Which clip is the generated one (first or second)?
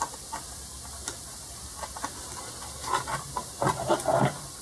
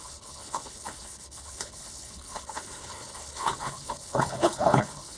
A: second